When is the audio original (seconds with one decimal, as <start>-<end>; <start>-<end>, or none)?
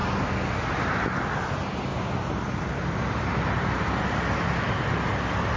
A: 0.0-5.6